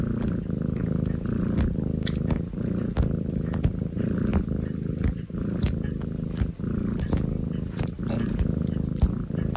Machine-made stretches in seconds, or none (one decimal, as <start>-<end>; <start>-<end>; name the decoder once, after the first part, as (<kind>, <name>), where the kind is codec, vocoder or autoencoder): 4.3-7.1 (vocoder, BigVGAN v2)